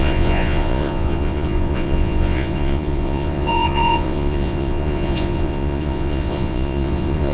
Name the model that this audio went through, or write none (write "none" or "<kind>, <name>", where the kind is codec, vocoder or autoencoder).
vocoder, Vocos